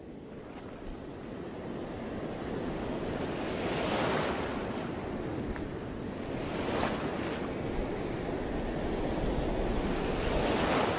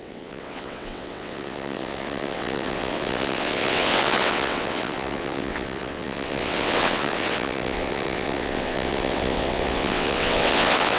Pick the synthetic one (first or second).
second